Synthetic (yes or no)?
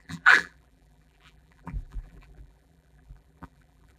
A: yes